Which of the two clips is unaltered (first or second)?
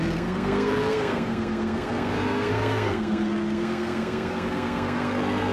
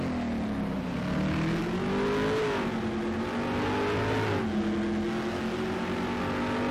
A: second